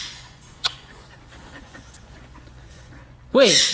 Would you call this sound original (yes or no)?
no